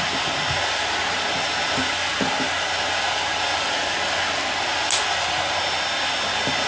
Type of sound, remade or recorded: recorded